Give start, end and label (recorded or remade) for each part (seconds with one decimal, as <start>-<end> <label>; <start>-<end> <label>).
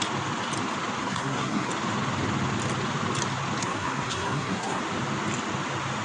0.0-1.0 recorded; 1.0-1.7 remade; 1.7-3.6 recorded; 3.6-4.8 remade; 4.8-6.0 recorded